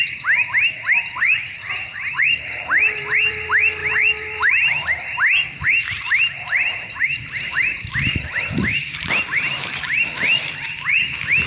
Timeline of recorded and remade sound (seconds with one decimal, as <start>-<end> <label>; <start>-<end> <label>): 0.0-11.5 remade